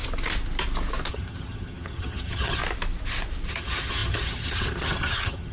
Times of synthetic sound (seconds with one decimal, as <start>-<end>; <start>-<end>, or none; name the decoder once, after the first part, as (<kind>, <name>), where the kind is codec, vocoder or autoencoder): 1.1-2.6 (vocoder, HiFi-GAN); 3.5-5.5